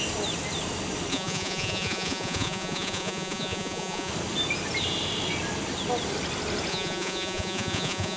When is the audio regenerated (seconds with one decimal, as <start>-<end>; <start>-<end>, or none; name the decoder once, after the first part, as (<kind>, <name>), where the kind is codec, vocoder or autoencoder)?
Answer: 1.1-4.1 (vocoder, Vocos); 6.7-8.2